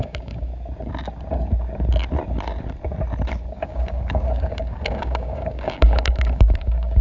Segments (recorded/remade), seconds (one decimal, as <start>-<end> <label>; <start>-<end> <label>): 0.0-0.5 remade; 0.5-3.5 recorded; 3.5-7.0 remade